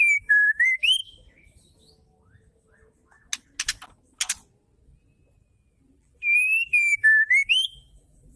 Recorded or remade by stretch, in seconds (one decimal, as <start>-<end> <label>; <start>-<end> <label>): 0.0-1.0 remade; 1.0-5.8 recorded; 5.8-8.4 remade

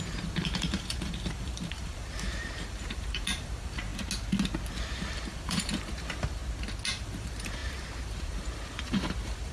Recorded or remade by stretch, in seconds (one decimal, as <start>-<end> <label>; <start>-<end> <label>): 0.0-3.9 remade; 3.9-4.9 recorded; 4.9-6.4 remade; 6.4-6.9 recorded; 6.9-9.5 remade

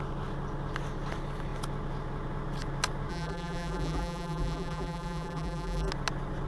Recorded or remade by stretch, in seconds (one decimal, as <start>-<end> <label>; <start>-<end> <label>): 0.0-3.1 recorded; 3.1-5.9 remade; 5.9-6.5 recorded

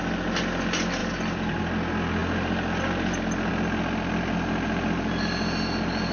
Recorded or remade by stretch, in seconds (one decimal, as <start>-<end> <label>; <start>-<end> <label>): 0.0-1.0 recorded; 1.0-1.6 remade; 1.6-6.1 recorded

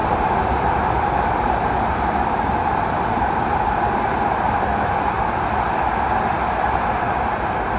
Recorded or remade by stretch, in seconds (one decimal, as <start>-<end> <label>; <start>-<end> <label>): 0.0-7.8 remade

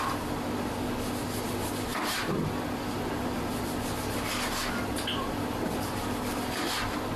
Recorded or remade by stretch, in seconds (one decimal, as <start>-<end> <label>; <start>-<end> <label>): 0.0-1.9 recorded; 1.9-6.2 remade; 6.2-7.2 recorded